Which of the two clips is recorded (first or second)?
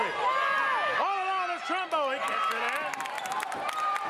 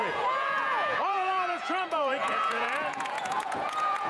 first